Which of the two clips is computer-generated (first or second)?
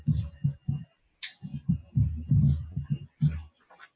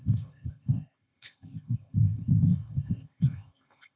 second